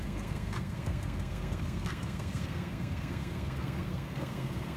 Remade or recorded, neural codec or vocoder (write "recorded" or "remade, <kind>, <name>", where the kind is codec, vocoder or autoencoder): remade, codec, SNAC